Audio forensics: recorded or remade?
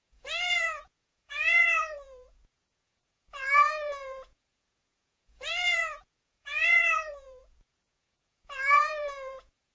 remade